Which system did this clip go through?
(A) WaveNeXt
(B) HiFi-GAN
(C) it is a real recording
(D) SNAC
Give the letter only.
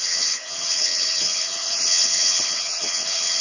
B